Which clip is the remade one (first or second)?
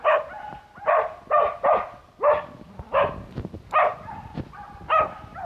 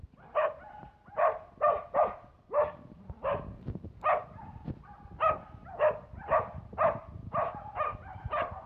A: second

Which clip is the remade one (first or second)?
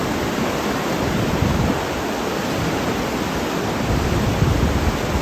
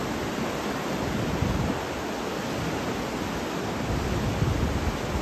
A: first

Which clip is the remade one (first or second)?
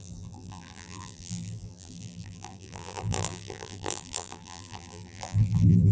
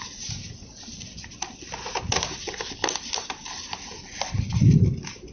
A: first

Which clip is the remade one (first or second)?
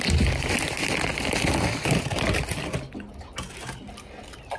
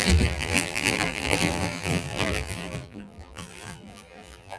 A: second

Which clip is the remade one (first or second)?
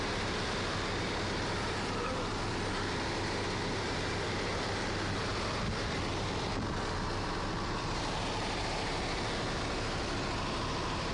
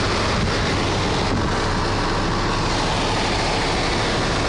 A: first